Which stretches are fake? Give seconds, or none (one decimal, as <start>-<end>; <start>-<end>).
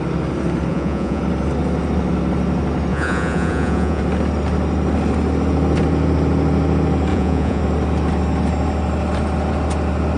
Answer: 0.7-1.2; 2.9-4.0; 7.1-7.6